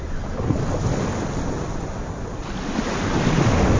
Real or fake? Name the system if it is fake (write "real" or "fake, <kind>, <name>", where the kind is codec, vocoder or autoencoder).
real